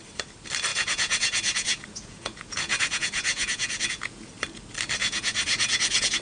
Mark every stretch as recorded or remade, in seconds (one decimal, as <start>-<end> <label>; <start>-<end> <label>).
0.0-0.7 recorded; 0.7-4.3 remade; 4.3-5.0 recorded; 5.0-6.2 remade